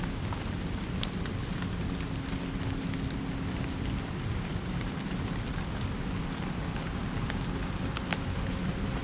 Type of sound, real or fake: real